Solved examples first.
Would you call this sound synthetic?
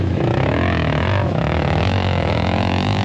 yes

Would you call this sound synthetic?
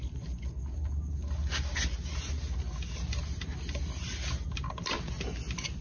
no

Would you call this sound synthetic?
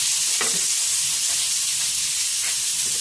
no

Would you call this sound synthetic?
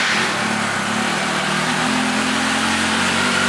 no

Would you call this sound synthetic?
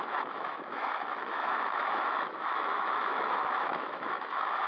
yes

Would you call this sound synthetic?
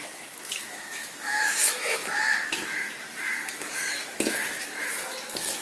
yes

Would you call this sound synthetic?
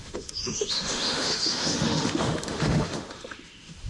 yes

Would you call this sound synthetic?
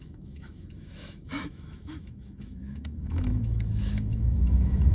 yes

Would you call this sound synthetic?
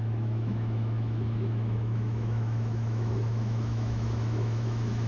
yes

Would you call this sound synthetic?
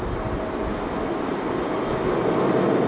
no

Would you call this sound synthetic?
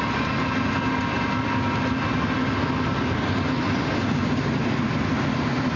no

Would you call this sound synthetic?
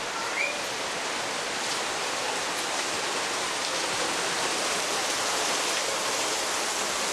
no